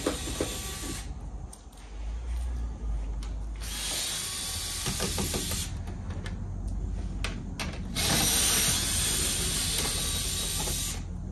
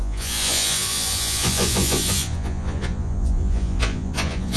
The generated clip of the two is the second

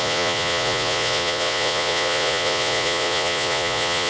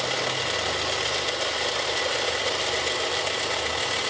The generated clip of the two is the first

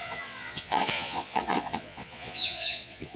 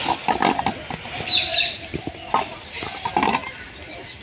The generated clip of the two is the first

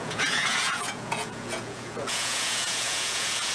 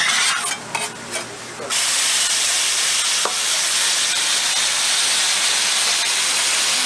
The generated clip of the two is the first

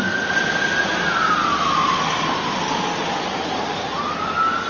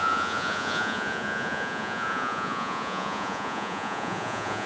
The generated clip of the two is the second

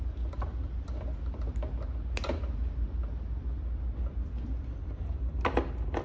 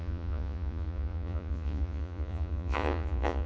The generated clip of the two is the second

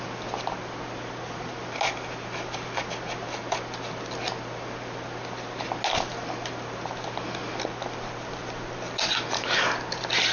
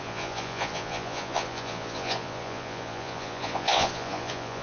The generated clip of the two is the second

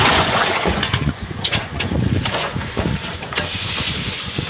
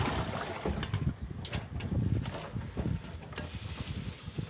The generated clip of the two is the first